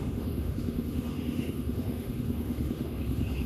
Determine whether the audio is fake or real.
fake